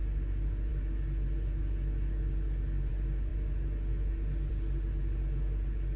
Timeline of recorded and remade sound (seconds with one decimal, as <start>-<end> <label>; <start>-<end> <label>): 0.0-6.0 recorded